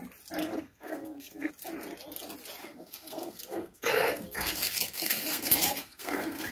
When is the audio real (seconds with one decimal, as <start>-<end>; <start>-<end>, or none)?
0.0-0.4; 1.5-2.6